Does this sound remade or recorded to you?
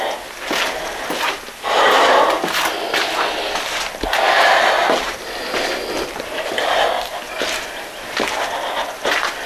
recorded